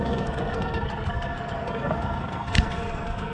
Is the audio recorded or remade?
remade